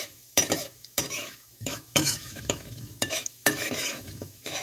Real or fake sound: fake